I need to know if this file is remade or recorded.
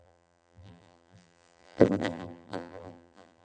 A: remade